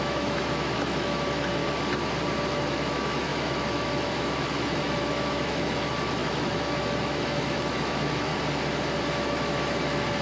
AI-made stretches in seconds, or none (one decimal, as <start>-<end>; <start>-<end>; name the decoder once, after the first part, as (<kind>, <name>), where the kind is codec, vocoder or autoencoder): 0.0-1.6 (autoencoder, DAC-VAE); 2.5-8.3; 9.2-10.2

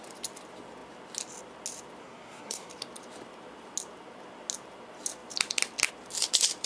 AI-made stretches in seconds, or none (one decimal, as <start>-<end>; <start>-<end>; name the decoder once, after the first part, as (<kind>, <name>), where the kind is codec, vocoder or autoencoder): 2.0-2.7 (codec, SNAC)

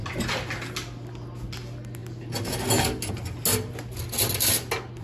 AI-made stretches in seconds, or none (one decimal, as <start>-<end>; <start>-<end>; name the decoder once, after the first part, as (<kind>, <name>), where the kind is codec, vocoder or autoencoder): none